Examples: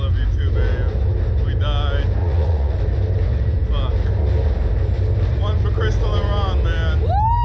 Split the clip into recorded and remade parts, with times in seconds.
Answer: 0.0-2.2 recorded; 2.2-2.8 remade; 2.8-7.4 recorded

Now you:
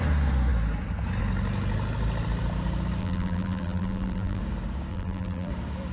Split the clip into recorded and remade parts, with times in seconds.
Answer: 0.0-3.0 recorded; 3.0-4.4 remade; 4.4-4.9 recorded; 4.9-5.5 remade; 5.5-5.9 recorded

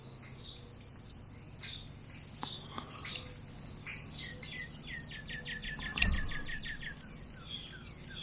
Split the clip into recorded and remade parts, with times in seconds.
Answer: 0.0-8.2 recorded

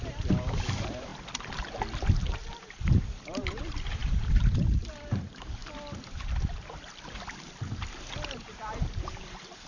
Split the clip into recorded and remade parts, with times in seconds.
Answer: 0.0-1.1 remade; 1.1-2.4 recorded; 2.4-5.6 remade; 5.6-8.3 recorded; 8.3-9.7 remade

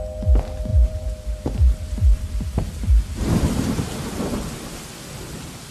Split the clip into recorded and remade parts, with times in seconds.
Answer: 0.0-0.7 recorded; 0.7-4.1 remade; 4.1-5.7 recorded

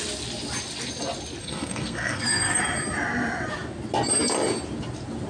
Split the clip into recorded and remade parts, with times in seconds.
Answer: 0.0-1.4 recorded; 1.4-2.6 remade; 2.6-5.3 recorded